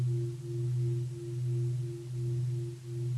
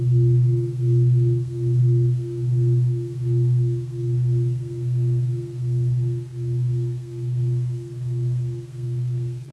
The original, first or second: first